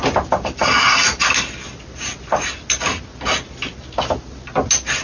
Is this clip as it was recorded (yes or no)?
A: yes